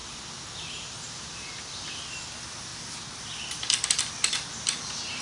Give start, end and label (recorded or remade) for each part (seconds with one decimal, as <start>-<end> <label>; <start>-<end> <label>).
0.0-1.6 recorded; 1.6-2.7 remade; 2.7-3.2 recorded; 3.2-5.2 remade